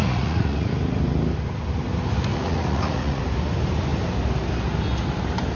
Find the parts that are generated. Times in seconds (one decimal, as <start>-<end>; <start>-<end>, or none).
0.0-0.7; 2.3-3.2